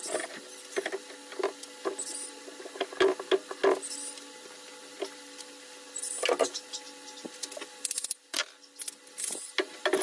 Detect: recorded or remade recorded